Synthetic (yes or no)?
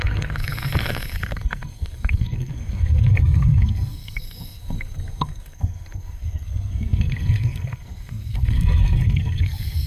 yes